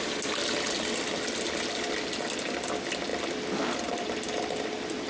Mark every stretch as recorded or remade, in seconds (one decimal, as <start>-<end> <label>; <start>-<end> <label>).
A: 0.0-5.1 recorded